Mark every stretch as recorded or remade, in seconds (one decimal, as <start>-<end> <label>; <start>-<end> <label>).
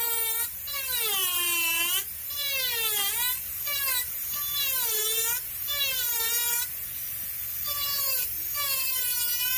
0.0-9.6 recorded